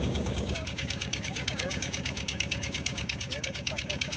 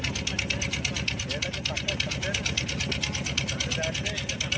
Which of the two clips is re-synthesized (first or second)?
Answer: first